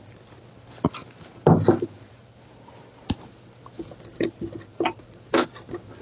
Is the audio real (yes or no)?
yes